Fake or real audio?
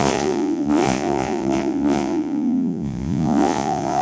fake